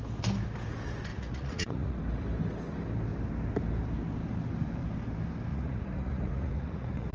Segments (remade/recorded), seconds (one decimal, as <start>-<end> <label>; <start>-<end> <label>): 0.0-1.1 recorded; 1.1-2.0 remade; 2.0-5.5 recorded; 5.5-7.1 remade